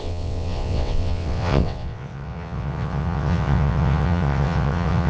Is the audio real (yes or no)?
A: no